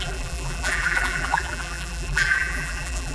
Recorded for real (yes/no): no